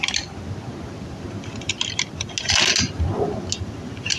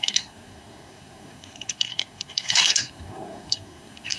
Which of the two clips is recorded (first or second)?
first